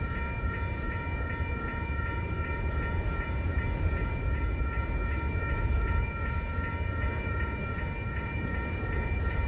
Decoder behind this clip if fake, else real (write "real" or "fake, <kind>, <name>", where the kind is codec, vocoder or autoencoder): fake, vocoder, Vocos